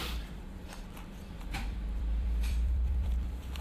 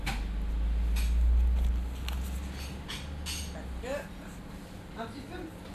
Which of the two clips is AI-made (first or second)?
first